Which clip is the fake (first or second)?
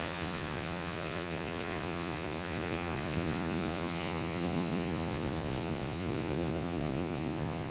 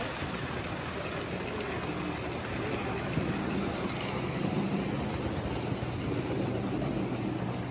first